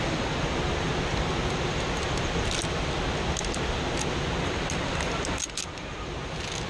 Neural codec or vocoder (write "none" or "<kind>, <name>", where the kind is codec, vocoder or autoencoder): none